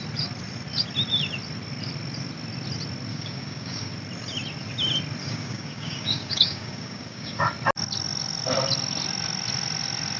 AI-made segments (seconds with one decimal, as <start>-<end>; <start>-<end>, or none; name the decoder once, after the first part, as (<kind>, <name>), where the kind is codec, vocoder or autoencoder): 3.1-3.9 (codec, DAC); 5.2-7.4